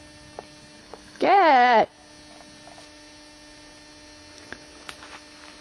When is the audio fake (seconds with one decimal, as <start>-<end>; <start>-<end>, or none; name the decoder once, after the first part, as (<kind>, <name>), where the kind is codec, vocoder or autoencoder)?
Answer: 0.8-1.9 (codec, HILCodec)

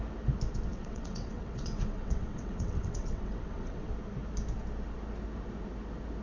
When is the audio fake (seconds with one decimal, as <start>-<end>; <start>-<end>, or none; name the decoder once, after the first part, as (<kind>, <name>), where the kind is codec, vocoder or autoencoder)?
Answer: 0.7-3.9 (vocoder, WaveNeXt)

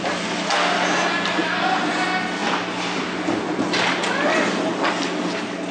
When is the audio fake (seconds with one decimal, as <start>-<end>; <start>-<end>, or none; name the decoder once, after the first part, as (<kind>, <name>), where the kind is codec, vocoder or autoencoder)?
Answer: none